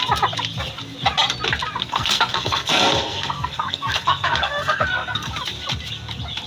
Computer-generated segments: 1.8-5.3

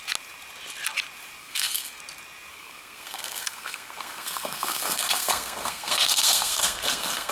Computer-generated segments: 1.4-2.0; 2.5-7.3